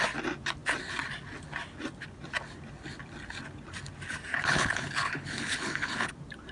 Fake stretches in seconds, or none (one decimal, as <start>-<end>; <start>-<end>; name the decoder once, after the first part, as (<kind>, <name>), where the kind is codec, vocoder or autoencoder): 4.3-6.1 (codec, HILCodec)